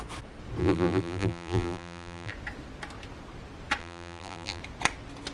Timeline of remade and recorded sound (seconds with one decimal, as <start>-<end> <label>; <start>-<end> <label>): 0.0-0.6 recorded; 0.6-2.3 remade; 2.3-3.8 recorded; 3.8-4.6 remade; 4.6-5.3 recorded